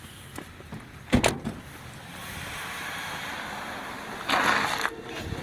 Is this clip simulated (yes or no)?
no